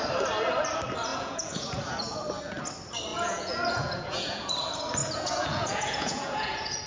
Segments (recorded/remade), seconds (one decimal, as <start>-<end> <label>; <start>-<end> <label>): 0.0-1.1 recorded; 1.1-1.8 remade; 1.8-3.1 recorded; 3.1-4.5 remade; 4.5-5.0 recorded; 5.0-6.9 remade